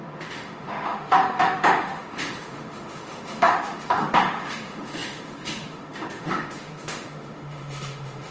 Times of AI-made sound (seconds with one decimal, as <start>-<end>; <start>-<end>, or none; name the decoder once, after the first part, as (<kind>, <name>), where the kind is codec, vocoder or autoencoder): 0.0-8.3 (autoencoder, DAC-VAE)